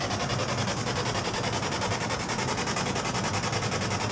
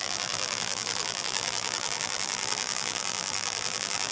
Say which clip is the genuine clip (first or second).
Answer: first